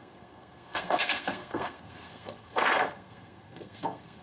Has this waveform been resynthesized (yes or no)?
yes